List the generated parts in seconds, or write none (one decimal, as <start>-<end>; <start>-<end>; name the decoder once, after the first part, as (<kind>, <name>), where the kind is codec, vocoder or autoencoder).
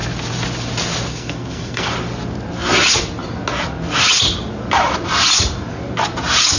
1.1-1.9 (codec, SNAC)